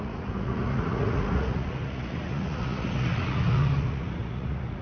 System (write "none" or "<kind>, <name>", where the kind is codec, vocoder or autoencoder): vocoder, Vocos